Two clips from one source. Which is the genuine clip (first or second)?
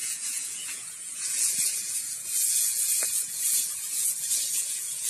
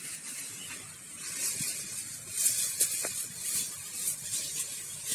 second